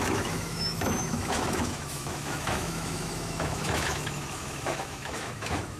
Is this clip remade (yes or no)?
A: yes